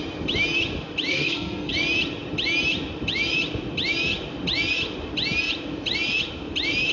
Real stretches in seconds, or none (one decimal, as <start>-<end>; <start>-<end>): 0.0-1.1; 1.7-6.9